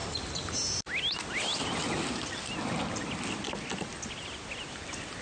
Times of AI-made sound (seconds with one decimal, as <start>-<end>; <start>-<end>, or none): none